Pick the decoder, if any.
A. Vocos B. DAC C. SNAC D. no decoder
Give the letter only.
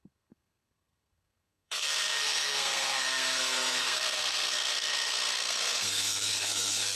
C